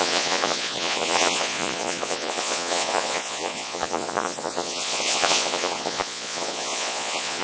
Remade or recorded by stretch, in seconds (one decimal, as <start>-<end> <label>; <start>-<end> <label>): 0.0-7.4 remade